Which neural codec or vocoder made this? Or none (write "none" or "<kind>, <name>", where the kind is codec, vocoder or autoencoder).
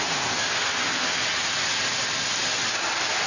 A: none